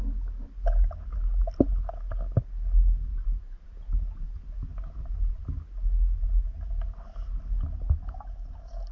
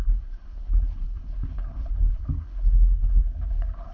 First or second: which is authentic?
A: first